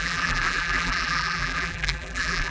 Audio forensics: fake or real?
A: fake